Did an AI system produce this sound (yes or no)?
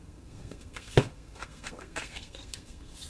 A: yes